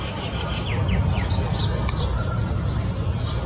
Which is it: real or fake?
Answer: real